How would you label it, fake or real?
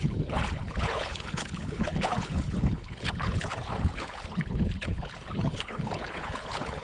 fake